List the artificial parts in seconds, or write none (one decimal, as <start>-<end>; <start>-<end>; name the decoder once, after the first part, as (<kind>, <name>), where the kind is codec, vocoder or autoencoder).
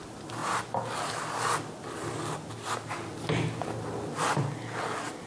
none